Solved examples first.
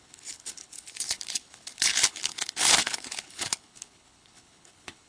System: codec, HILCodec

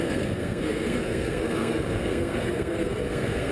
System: codec, SNAC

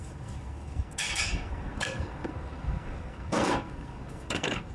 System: codec, SNAC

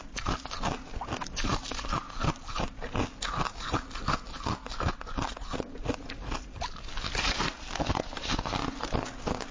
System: none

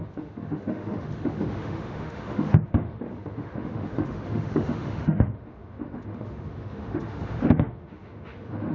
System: autoencoder, DAC-VAE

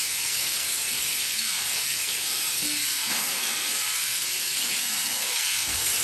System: codec, SNAC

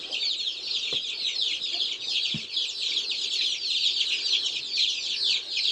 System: vocoder, BigVGAN v2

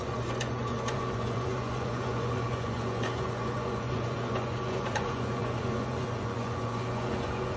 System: vocoder, Vocos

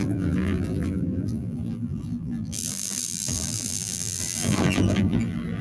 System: vocoder, BigVGAN v2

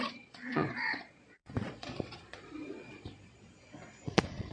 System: vocoder, Vocos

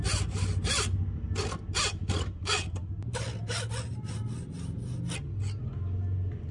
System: none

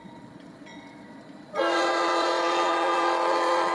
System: vocoder, Vocos